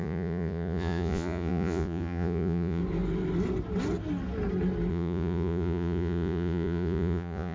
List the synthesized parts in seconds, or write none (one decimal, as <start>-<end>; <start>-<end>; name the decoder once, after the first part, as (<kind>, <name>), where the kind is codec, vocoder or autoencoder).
0.0-2.8 (vocoder, Vocos); 4.9-7.5

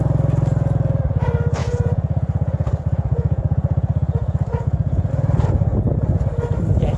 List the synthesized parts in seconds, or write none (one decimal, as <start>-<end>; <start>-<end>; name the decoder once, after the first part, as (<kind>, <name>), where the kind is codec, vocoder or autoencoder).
1.6-5.1 (vocoder, Vocos)

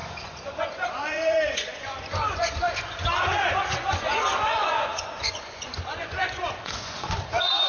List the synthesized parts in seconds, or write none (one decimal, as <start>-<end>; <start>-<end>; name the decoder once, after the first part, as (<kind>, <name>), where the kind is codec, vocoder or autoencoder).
0.0-7.7 (vocoder, Vocos)